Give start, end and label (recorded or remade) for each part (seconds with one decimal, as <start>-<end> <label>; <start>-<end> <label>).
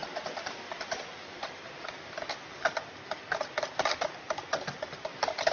0.0-5.5 recorded